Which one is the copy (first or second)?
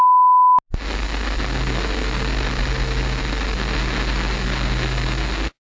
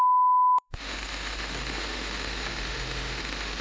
second